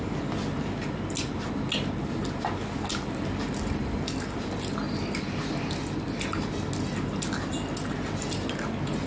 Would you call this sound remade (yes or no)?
no